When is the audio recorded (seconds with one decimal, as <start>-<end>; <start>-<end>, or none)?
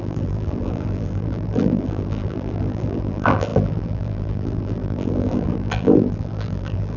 none